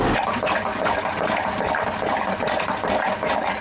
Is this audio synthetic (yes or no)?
no